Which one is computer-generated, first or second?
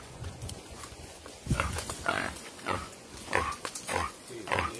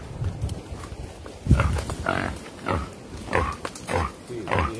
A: first